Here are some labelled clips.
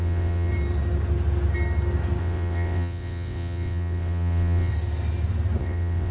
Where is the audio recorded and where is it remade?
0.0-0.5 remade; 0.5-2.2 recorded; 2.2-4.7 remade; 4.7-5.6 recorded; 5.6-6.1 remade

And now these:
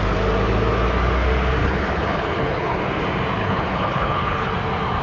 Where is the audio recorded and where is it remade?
0.0-1.6 recorded; 1.6-2.8 remade; 2.8-3.4 recorded; 3.4-4.5 remade; 4.5-5.0 recorded

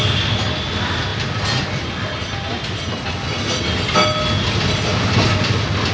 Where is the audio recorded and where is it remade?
0.0-5.9 recorded

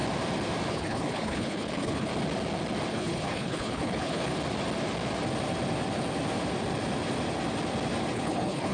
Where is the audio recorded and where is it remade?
0.0-0.7 recorded; 0.7-2.1 remade; 2.1-2.9 recorded; 2.9-4.3 remade; 4.3-8.1 recorded; 8.1-8.7 remade

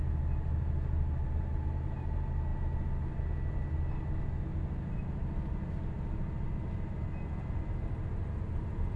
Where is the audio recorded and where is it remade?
0.0-9.0 recorded

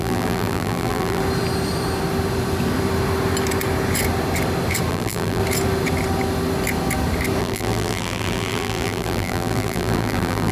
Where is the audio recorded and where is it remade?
0.0-1.2 remade; 1.2-4.9 recorded; 4.9-5.4 remade; 5.4-7.4 recorded; 7.4-10.5 remade